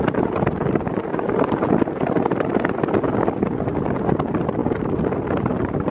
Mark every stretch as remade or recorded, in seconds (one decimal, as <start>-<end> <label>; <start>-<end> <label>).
0.0-5.9 recorded